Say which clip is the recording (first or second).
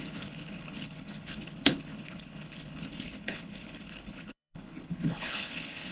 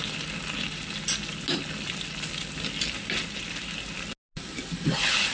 second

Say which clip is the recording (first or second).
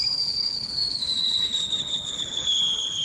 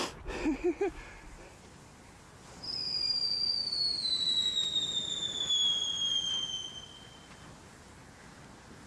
second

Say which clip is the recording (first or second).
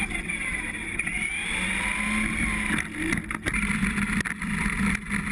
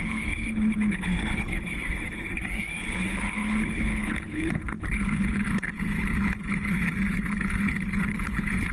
first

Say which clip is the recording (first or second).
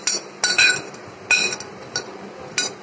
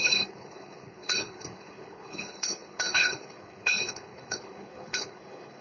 first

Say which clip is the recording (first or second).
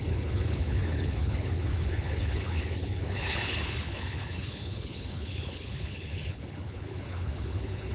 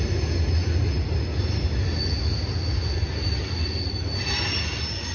second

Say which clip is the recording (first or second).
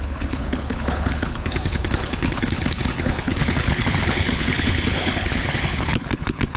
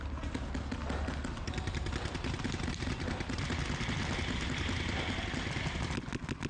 second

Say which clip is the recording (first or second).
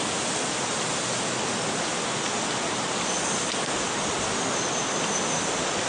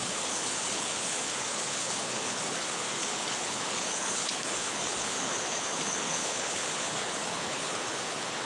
first